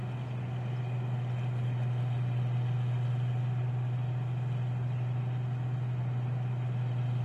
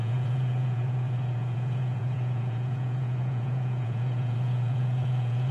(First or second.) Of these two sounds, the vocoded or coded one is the second